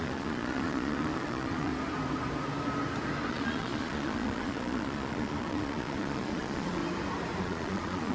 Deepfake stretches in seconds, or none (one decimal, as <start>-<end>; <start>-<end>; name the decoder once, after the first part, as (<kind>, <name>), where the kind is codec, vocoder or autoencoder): 0.0-1.7 (vocoder, Vocos); 3.3-6.8; 7.4-8.1